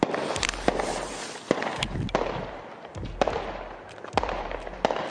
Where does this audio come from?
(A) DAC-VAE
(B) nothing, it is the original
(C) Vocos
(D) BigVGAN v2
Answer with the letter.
D